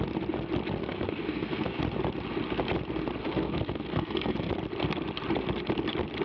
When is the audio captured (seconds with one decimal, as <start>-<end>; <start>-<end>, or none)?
0.0-0.8; 1.8-3.2; 4.5-6.2